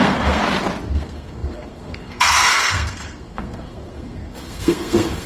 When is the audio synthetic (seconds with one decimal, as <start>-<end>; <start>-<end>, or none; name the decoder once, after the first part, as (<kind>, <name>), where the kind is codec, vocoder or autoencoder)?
0.0-0.4 (codec, SNAC); 0.9-5.3